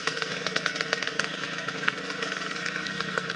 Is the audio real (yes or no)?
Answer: no